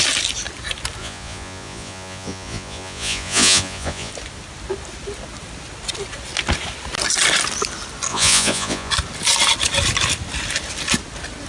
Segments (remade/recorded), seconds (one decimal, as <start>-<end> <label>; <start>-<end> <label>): 0.0-1.0 recorded; 1.0-4.1 remade; 4.1-8.1 recorded; 8.1-8.9 remade; 8.9-11.5 recorded